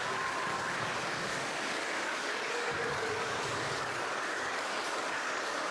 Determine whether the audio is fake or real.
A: fake